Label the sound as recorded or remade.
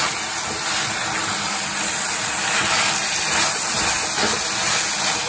recorded